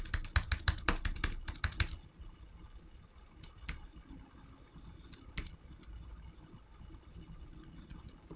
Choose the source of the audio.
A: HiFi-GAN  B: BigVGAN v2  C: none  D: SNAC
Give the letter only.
C